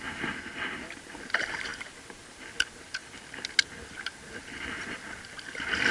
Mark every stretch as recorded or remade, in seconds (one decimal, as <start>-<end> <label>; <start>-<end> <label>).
0.0-5.9 recorded